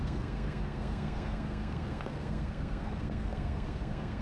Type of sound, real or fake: fake